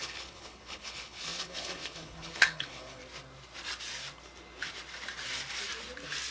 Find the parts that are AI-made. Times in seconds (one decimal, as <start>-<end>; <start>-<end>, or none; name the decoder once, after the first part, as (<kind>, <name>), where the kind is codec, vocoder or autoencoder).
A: 0.0-3.0 (codec, HILCodec)